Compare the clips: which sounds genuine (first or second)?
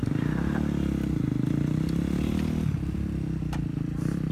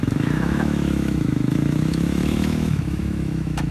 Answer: first